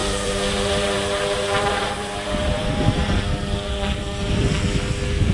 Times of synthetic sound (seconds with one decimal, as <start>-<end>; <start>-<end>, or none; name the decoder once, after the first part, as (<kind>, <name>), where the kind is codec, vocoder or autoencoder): 0.0-3.2 (vocoder, BigVGAN v2)